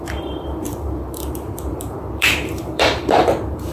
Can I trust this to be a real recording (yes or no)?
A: no